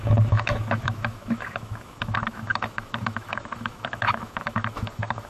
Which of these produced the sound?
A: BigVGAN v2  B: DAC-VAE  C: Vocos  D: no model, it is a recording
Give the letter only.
B